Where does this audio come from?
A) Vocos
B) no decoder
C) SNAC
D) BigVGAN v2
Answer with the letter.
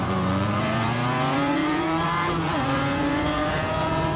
A